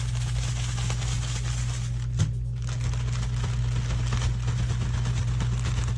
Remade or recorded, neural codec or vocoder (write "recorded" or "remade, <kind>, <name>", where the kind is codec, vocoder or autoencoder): recorded